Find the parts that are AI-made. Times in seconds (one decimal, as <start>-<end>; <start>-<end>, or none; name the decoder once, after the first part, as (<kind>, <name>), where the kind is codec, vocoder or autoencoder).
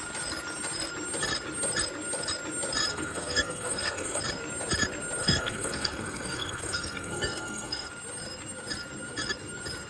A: 2.9-4.2 (codec, SNAC); 5.2-7.9